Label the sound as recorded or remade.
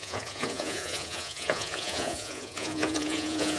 remade